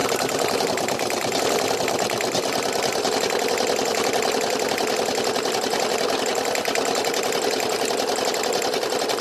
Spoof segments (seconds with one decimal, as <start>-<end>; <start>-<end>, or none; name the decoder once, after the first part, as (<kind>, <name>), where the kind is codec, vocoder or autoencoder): 0.0-1.4 (vocoder, BigVGAN v2)